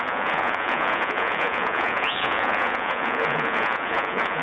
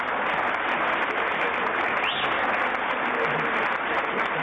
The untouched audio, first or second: second